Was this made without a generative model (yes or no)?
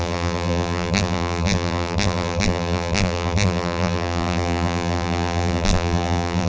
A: no